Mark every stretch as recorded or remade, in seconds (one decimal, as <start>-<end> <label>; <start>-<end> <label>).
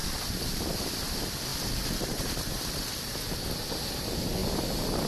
0.0-5.1 recorded